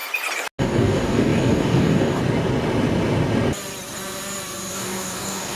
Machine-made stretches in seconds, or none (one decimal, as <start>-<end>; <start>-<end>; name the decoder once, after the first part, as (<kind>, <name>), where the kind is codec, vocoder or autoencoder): 0.6-2.2 (codec, DAC); 4.7-5.6